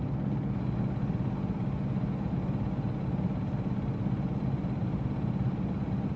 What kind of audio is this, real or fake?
real